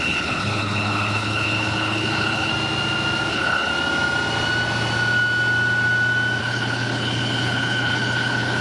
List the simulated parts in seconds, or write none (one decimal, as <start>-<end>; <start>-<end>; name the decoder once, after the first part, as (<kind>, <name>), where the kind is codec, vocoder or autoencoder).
0.0-2.5 (codec, HILCodec); 3.3-3.7; 6.4-8.6